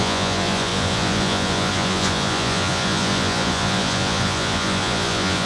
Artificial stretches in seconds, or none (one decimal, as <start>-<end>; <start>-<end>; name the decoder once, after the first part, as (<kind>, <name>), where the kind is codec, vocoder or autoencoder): 0.0-5.5 (vocoder, Vocos)